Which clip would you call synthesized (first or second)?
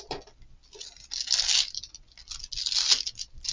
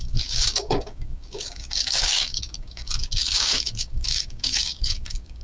second